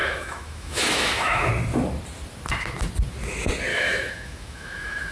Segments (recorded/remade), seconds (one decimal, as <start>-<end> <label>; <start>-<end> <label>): 0.0-1.5 remade; 1.5-3.7 recorded; 3.7-5.1 remade

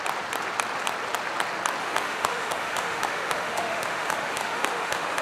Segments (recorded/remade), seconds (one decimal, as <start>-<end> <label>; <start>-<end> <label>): 0.0-1.8 recorded; 1.8-5.2 remade

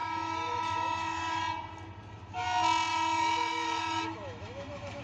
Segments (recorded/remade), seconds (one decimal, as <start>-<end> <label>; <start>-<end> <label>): 0.0-1.4 remade; 1.4-2.9 recorded; 2.9-5.0 remade